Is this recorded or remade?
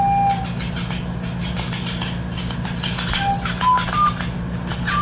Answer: recorded